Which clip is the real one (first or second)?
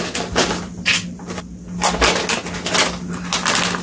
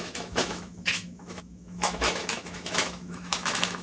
first